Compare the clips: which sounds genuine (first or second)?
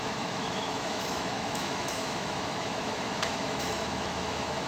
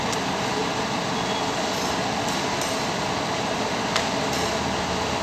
second